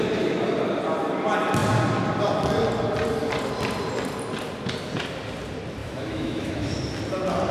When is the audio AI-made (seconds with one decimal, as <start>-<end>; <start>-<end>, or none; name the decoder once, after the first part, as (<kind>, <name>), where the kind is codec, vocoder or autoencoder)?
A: 5.8-6.7 (autoencoder, DAC-VAE)